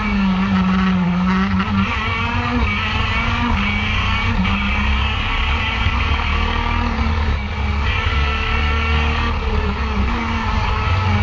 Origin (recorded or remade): remade